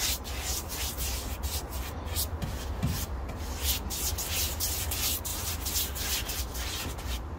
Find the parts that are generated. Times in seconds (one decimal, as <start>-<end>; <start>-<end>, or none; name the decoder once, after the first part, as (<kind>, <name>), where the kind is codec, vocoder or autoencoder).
none